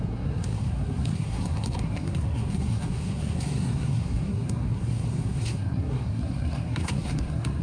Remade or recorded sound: remade